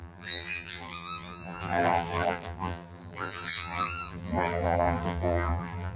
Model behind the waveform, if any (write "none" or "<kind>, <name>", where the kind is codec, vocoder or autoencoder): vocoder, BigVGAN v2